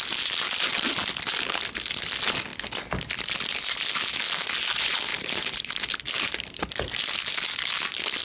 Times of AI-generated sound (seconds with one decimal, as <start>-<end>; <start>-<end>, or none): 5.1-5.6